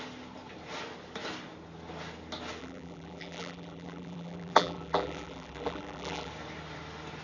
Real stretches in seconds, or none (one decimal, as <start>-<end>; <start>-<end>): 0.0-2.6; 6.3-7.2